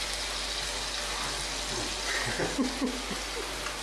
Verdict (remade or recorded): recorded